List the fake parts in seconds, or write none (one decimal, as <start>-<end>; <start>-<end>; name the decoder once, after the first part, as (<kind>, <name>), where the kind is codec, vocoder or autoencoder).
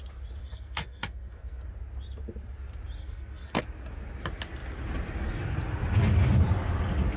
0.4-1.7 (codec, SNAC); 3.0-3.6